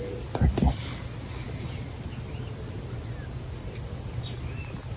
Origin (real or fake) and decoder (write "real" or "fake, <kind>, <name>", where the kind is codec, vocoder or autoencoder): real